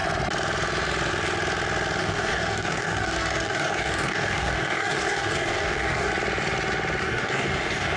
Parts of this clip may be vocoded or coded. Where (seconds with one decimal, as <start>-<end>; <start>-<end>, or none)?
2.0-6.1; 7.0-8.0